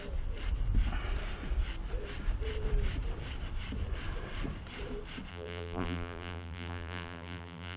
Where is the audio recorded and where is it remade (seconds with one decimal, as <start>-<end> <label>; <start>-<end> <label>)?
0.0-5.3 recorded; 5.3-7.8 remade